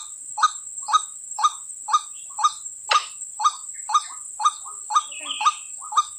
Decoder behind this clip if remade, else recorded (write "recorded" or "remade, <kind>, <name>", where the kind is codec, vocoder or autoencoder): recorded